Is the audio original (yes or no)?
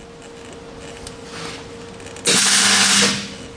yes